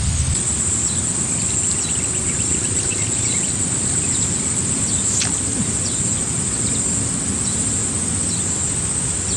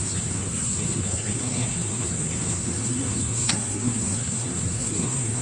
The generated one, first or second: second